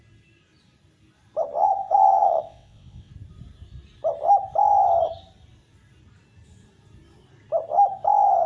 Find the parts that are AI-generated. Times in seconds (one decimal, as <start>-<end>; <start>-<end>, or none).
1.6-3.1